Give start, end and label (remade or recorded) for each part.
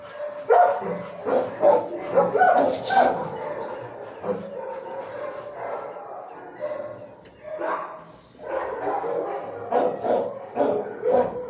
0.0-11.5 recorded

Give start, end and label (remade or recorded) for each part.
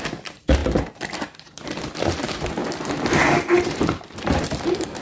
0.0-5.0 remade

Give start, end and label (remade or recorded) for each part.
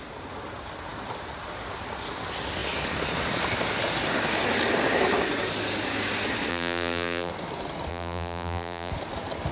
0.0-6.5 recorded; 6.5-7.3 remade; 7.3-7.9 recorded; 7.9-8.9 remade; 8.9-9.5 recorded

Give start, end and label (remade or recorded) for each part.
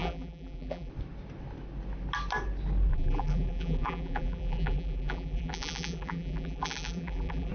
0.0-0.9 remade; 0.9-2.9 recorded; 2.9-7.5 remade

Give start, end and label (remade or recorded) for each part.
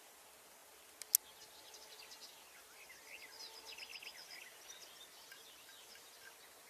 0.0-6.7 recorded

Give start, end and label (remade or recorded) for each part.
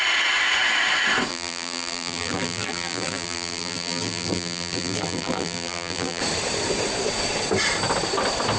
0.0-1.3 recorded; 1.3-6.2 remade; 6.2-8.6 recorded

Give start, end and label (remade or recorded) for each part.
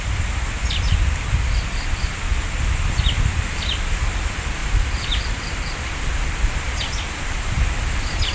0.0-4.6 recorded; 4.6-7.6 remade; 7.6-8.3 recorded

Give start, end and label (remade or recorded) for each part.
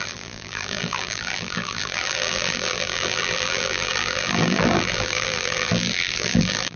0.0-6.8 remade